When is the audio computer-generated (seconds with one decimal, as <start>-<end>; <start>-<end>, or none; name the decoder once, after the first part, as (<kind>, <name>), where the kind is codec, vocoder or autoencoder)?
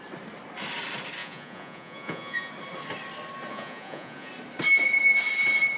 1.2-2.5 (vocoder, Vocos); 3.5-4.3